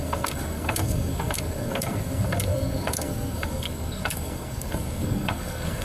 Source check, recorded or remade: remade